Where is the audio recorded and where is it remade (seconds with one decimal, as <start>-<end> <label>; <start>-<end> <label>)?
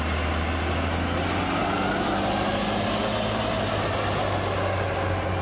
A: 0.0-5.4 recorded